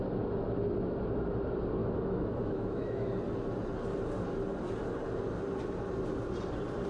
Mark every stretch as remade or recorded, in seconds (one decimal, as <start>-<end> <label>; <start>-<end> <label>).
0.0-1.8 recorded; 1.8-3.1 remade; 3.1-6.9 recorded